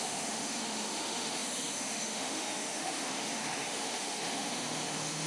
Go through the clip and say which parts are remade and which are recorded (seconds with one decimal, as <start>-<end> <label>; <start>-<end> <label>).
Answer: 0.0-5.3 remade